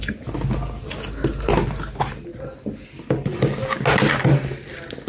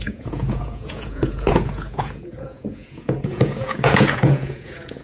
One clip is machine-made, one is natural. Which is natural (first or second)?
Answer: first